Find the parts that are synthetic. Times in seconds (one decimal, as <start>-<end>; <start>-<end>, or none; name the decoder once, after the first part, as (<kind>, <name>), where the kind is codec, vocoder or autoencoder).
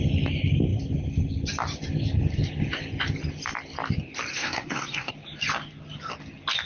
4.3-5.1 (codec, SNAC)